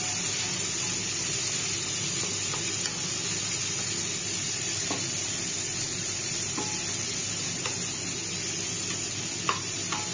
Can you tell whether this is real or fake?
real